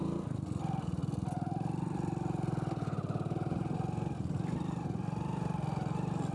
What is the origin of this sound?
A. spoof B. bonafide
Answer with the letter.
B